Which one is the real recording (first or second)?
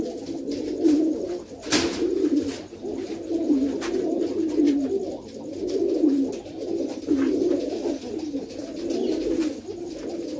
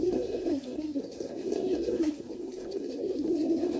first